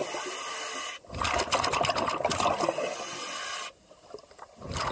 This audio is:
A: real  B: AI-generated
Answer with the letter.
A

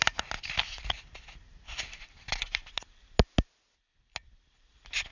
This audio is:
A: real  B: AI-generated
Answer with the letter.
A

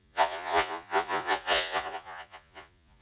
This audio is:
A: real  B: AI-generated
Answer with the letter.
B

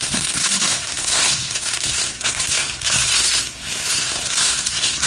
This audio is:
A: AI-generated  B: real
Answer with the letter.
A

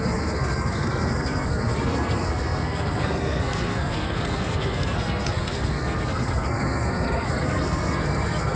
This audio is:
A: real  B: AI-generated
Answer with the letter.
B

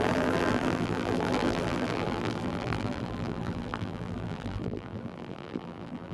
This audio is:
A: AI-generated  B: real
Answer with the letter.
A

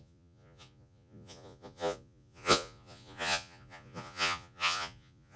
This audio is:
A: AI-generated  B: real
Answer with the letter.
A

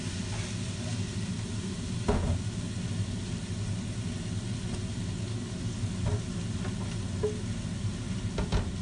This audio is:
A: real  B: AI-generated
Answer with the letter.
A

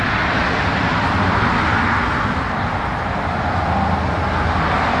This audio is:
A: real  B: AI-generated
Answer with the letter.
A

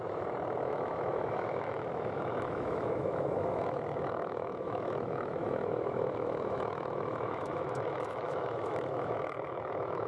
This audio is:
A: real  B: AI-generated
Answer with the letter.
B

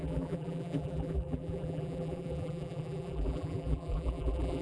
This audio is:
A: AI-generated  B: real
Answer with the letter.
A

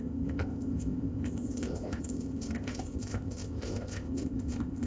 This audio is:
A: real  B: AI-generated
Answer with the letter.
B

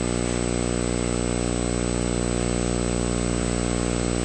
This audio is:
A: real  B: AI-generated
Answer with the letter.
A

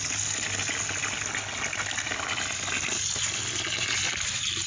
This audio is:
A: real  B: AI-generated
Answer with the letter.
A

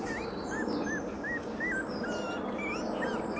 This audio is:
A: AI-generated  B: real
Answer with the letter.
B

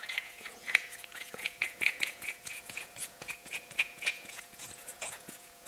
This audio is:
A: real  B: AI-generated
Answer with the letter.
B